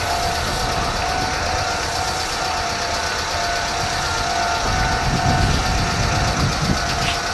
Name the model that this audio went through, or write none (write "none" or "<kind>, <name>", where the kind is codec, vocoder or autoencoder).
none